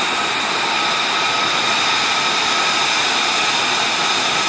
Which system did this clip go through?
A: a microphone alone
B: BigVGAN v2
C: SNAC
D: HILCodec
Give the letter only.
A